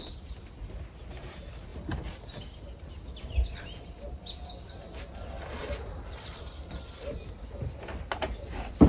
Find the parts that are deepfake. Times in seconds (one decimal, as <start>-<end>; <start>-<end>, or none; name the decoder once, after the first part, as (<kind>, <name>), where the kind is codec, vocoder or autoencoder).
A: none

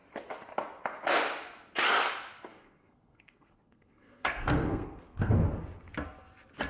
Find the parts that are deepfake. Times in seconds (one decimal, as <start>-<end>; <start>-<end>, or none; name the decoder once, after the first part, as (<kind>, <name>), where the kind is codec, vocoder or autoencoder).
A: 2.5-5.3 (codec, SNAC)

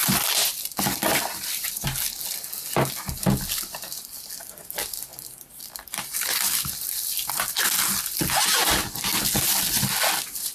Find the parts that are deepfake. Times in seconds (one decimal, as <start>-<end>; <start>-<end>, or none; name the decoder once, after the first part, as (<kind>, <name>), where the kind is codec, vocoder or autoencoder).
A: 0.0-1.7 (vocoder, BigVGAN v2); 5.1-8.0

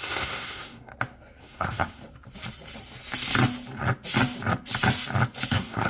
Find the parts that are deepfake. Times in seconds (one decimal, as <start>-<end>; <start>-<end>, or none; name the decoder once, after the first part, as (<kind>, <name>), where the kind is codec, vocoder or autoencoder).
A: 0.0-0.9 (codec, SNAC); 1.4-2.0; 5.5-5.9

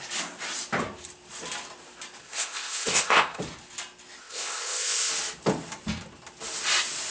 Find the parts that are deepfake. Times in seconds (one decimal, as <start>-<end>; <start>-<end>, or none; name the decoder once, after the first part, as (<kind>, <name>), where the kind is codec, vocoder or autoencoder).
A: 2.2-3.4 (codec, ZipCodec); 4.2-5.1

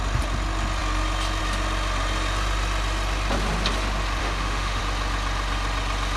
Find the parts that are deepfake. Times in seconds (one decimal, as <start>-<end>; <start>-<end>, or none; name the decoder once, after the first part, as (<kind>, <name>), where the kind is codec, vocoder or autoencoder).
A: 4.2-4.8 (autoencoder, DAC-VAE)

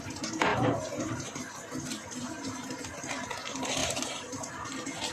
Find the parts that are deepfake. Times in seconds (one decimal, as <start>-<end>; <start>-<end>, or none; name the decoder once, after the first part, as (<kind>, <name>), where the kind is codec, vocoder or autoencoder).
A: 0.5-1.4 (vocoder, BigVGAN v2); 2.2-2.8; 3.8-4.5

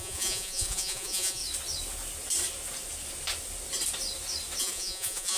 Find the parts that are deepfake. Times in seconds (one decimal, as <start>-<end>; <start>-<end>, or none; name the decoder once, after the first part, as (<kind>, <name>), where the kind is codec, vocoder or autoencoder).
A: 0.0-1.4 (vocoder, Vocos); 4.6-5.4